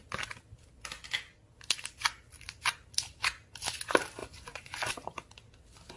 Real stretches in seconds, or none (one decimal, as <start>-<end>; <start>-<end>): 0.0-4.2; 4.9-6.0

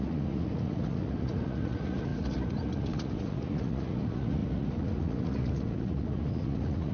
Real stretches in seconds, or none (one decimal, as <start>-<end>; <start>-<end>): none

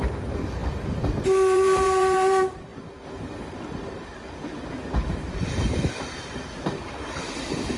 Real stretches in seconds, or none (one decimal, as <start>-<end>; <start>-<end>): 2.7-5.1